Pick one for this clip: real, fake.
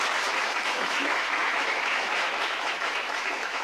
fake